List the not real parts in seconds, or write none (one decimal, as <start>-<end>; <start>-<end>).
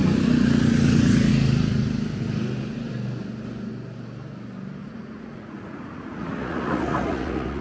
4.8-7.6